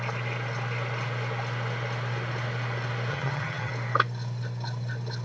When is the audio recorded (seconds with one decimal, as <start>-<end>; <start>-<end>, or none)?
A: 0.0-3.1; 3.7-5.2